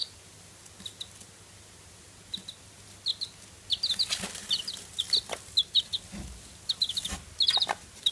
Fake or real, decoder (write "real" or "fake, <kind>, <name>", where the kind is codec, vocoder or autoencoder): real